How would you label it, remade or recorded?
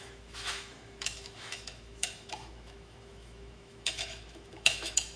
remade